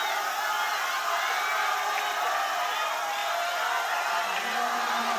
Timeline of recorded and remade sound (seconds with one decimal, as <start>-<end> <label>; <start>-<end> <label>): 0.0-5.2 recorded